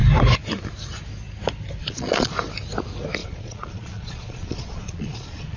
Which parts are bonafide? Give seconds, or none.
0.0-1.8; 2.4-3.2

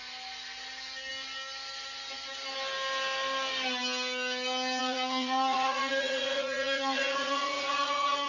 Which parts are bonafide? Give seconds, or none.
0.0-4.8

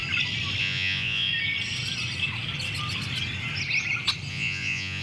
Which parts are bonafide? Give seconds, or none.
0.0-0.6; 1.3-4.3